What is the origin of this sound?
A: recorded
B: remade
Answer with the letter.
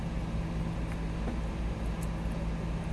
A